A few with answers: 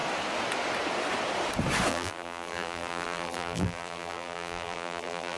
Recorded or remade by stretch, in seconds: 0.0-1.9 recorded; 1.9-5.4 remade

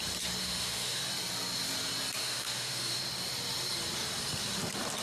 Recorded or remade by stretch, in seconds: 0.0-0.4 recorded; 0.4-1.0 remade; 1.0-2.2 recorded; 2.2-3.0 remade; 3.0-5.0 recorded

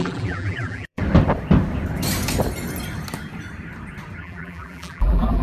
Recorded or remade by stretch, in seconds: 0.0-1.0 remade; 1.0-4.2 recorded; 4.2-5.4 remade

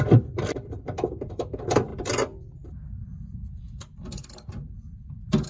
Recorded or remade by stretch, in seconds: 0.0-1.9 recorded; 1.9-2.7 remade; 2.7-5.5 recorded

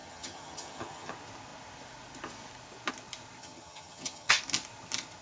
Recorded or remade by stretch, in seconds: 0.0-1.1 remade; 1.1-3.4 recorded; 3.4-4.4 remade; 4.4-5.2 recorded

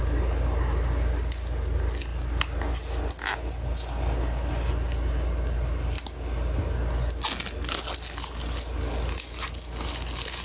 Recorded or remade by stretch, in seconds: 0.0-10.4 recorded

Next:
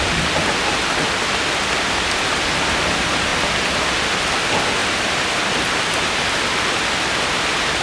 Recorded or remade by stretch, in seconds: 0.0-4.8 recorded; 4.8-6.4 remade; 6.4-7.8 recorded